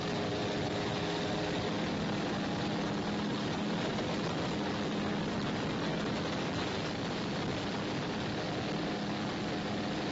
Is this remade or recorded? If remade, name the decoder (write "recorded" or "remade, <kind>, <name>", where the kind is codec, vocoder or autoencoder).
recorded